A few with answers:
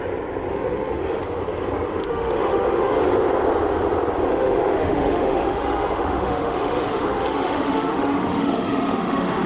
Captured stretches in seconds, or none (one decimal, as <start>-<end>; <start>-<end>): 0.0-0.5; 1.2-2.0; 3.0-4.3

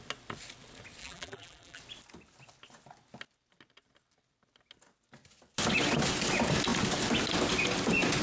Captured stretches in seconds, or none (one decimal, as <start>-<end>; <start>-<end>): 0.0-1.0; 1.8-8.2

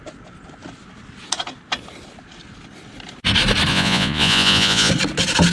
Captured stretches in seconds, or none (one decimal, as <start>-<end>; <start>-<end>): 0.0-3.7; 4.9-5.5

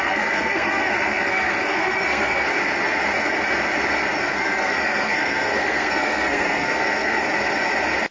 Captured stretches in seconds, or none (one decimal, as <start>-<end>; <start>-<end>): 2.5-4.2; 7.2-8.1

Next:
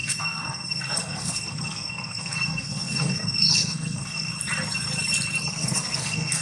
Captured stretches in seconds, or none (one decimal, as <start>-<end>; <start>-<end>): 4.3-5.5

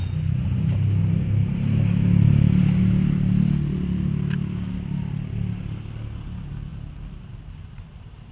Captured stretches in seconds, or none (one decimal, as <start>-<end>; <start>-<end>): 0.0-8.3

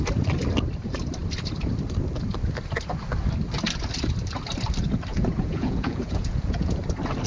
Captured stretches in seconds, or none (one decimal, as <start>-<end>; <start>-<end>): 0.0-5.1; 6.8-7.3

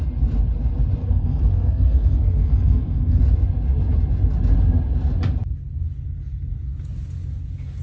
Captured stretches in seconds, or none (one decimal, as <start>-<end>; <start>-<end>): 0.0-1.0; 3.2-7.8